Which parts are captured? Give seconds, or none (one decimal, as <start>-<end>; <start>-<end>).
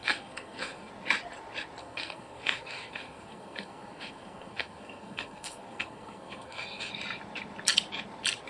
0.9-1.8; 6.9-8.5